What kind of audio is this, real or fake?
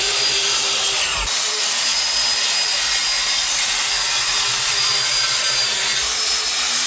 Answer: real